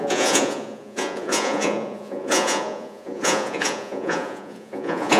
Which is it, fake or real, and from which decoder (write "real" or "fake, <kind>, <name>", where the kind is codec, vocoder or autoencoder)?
fake, vocoder, Vocos